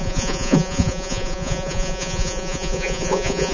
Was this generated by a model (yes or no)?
yes